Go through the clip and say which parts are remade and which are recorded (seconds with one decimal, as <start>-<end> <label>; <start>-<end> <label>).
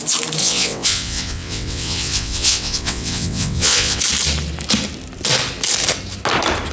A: 0.0-0.4 recorded; 0.4-4.0 remade; 4.0-6.7 recorded